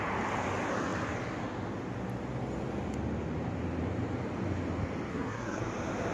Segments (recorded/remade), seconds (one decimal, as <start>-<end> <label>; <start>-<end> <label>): 0.0-5.1 recorded; 5.1-5.6 remade; 5.6-6.1 recorded